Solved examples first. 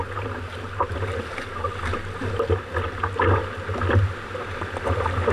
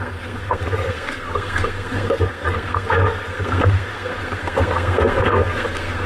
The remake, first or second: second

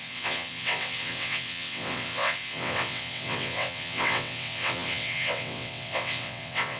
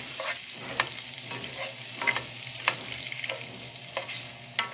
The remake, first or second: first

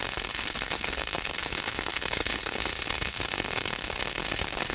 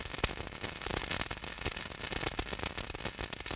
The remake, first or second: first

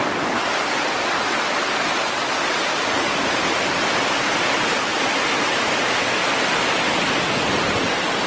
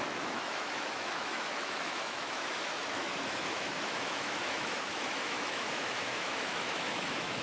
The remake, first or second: second